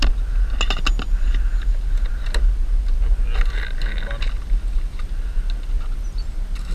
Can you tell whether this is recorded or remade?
recorded